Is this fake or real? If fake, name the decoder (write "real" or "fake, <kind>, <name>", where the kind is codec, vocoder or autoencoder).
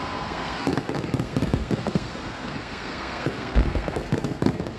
fake, codec, SNAC